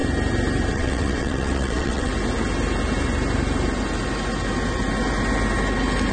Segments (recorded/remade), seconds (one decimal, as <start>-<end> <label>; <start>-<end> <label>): 0.0-0.7 recorded; 0.7-2.1 remade; 2.1-6.1 recorded